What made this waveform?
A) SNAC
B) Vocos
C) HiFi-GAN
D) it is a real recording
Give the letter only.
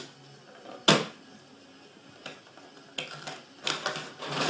D